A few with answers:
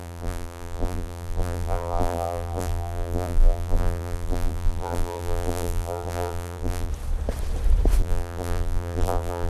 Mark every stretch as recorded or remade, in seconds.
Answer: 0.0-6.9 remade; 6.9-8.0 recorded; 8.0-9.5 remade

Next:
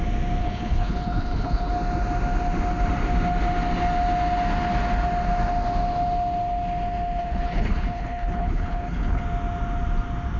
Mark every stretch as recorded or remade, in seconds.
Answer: 0.0-0.4 recorded; 0.4-1.7 remade; 1.7-7.2 recorded; 7.2-9.2 remade; 9.2-10.4 recorded

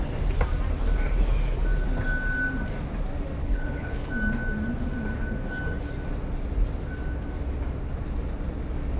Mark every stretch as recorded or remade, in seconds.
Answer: 0.0-3.4 recorded; 3.4-4.1 remade; 4.1-9.0 recorded

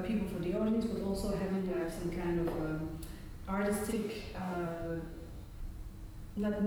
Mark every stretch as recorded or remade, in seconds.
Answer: 0.0-1.5 recorded; 1.5-2.0 remade; 2.0-3.9 recorded; 3.9-5.6 remade; 5.6-6.7 recorded

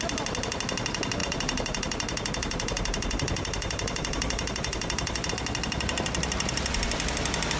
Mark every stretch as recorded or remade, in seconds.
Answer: 0.0-1.2 recorded; 1.2-5.3 remade; 5.3-7.6 recorded

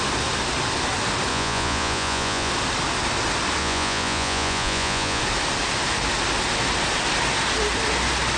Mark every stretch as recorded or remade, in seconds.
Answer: 0.0-1.3 recorded; 1.3-2.5 remade; 2.5-3.6 recorded; 3.6-5.2 remade; 5.2-8.4 recorded

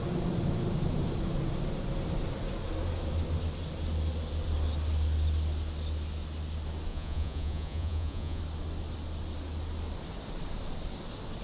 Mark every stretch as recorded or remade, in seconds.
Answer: 0.0-6.9 recorded; 6.9-8.4 remade; 8.4-11.4 recorded

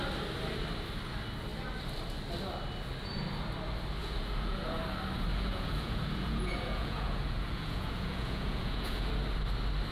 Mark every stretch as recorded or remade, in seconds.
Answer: 0.0-4.0 recorded; 4.0-4.8 remade; 4.8-5.3 recorded; 5.3-9.1 remade; 9.1-9.9 recorded